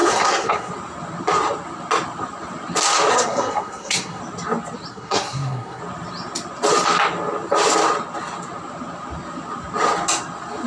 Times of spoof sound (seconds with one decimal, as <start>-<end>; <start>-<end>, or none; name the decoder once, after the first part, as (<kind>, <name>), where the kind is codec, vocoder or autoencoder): 0.0-0.7 (codec, SNAC); 3.1-4.2; 4.9-5.8